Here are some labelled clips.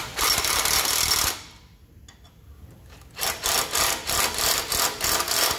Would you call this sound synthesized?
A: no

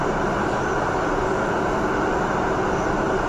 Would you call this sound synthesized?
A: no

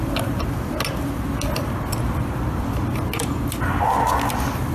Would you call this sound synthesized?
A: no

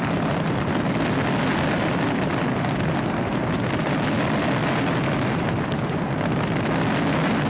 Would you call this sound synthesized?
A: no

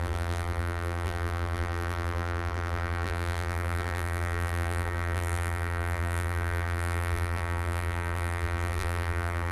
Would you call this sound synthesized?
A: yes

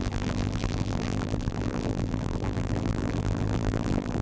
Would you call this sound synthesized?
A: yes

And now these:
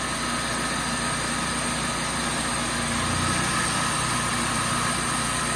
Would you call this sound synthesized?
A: no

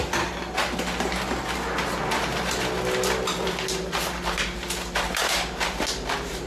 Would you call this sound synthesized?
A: no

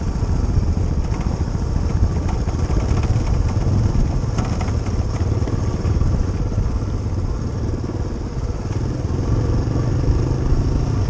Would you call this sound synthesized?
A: no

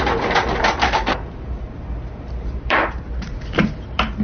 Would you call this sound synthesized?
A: yes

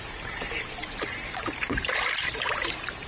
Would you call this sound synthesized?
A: yes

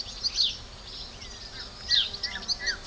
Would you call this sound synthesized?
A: no